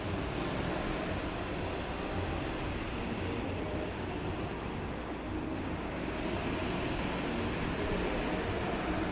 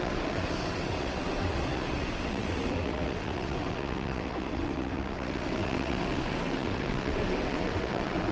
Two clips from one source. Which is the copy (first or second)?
second